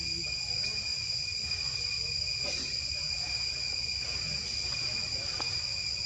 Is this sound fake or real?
real